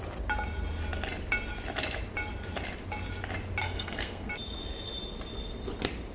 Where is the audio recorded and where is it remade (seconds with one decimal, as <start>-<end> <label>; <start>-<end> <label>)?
0.0-3.6 recorded; 3.6-4.3 remade; 4.3-6.1 recorded